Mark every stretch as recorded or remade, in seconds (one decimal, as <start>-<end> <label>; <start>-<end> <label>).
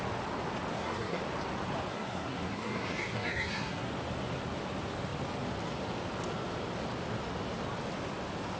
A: 0.0-0.7 recorded; 0.7-1.2 remade; 1.2-1.9 recorded; 1.9-3.9 remade; 3.9-8.6 recorded